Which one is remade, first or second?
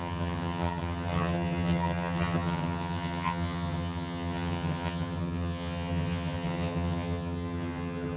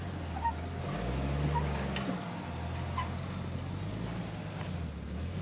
first